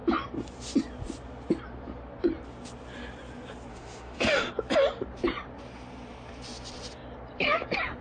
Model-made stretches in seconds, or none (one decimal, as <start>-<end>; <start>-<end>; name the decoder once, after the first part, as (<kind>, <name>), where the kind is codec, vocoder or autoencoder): 3.7-4.5 (autoencoder, DAC-VAE)